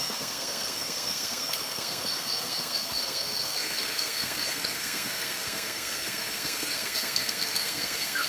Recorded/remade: remade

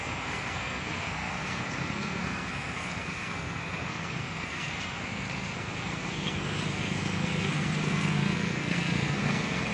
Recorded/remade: remade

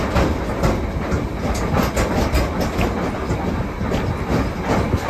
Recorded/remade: recorded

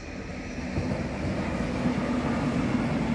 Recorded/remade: recorded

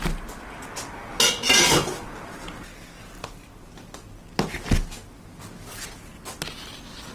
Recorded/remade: recorded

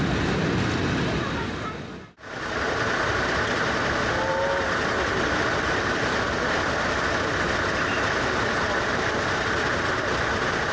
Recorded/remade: recorded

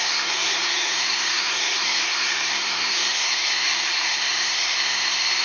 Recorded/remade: remade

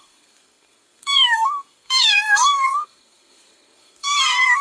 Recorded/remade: remade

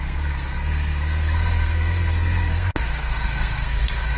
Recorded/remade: remade